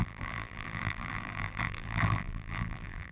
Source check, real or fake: fake